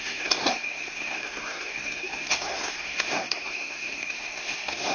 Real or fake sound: fake